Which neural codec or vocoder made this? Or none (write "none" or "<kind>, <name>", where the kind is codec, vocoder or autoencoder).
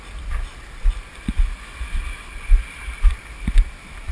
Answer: none